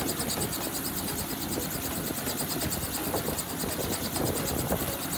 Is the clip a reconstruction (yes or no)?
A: no